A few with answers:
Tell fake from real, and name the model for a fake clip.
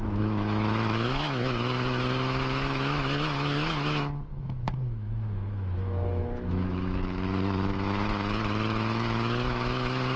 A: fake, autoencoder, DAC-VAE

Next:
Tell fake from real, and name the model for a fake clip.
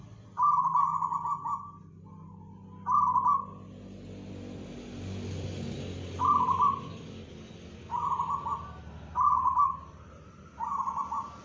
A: real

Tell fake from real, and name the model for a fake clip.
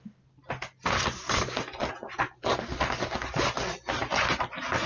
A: real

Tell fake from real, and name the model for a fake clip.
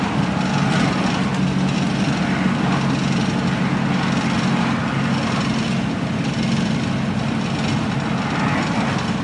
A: real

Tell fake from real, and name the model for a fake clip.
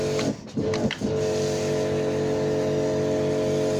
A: real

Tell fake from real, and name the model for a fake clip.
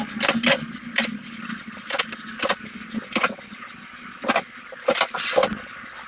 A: real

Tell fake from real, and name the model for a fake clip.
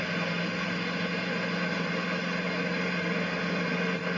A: real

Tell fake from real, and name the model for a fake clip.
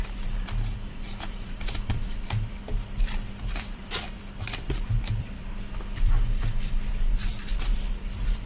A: fake, vocoder, BigVGAN v2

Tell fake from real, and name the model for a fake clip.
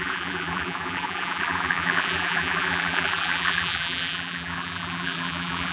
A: fake, vocoder, BigVGAN v2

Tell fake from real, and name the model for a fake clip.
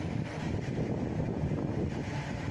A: real